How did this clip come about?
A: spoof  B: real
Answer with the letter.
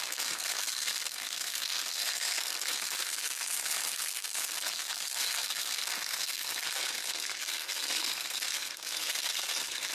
A